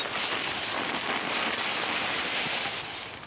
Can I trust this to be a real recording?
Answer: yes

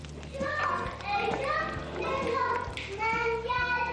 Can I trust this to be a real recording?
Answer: yes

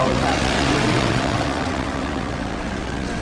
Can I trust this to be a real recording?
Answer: no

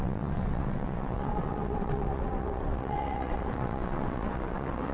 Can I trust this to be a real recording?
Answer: no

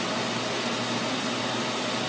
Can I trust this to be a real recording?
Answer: yes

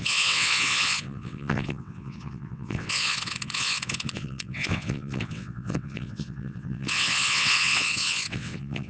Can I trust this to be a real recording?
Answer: no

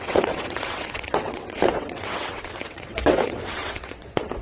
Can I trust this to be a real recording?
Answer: no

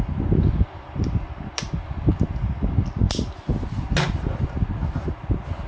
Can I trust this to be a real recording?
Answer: yes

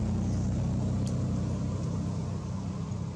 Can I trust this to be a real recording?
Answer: yes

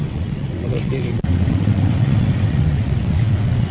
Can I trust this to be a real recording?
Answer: no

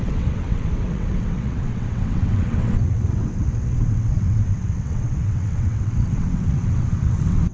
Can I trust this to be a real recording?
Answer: no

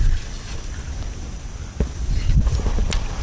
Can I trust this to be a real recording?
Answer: yes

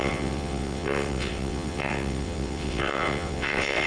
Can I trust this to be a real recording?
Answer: no